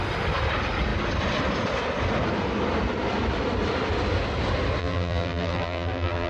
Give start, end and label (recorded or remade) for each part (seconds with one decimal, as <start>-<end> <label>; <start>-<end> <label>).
0.0-4.8 recorded; 4.8-6.3 remade